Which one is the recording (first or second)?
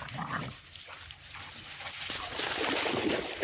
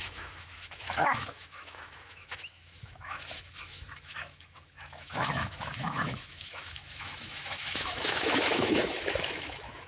first